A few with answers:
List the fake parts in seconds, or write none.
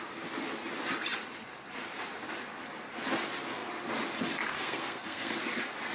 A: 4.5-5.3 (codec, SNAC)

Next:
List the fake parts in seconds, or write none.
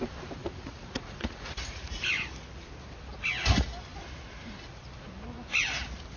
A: 0.4-2.1 (vocoder, Vocos)